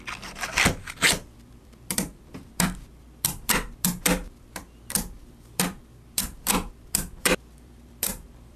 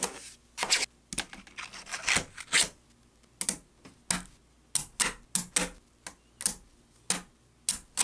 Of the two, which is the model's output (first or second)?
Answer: first